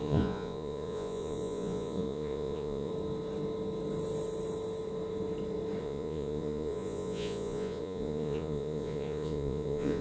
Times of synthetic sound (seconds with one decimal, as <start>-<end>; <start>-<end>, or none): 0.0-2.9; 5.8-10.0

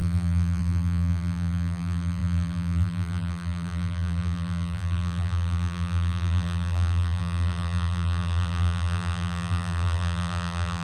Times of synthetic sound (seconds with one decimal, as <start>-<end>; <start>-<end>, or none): 0.0-10.8

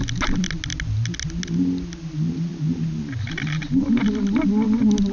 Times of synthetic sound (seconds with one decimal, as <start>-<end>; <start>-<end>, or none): none

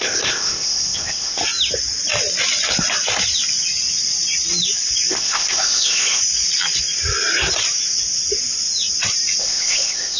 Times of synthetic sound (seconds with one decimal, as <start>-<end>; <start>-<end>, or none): 0.0-1.4; 5.1-6.2; 9.4-10.2

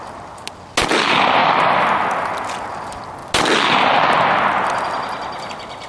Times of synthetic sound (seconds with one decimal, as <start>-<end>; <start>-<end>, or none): none